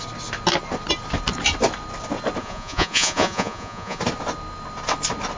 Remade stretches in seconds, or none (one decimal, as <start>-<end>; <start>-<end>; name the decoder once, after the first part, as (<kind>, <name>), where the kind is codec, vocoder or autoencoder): 2.4-4.0 (vocoder, Vocos)